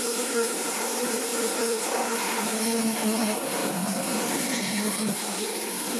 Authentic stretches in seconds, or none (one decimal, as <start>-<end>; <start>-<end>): none